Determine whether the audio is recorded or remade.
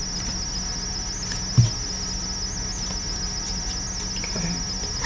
recorded